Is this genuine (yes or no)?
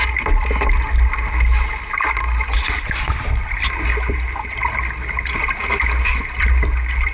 yes